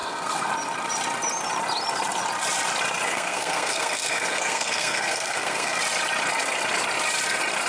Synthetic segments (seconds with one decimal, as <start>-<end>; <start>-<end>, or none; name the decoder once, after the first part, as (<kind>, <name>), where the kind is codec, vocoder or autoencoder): 0.0-0.5 (codec, SNAC); 3.1-5.8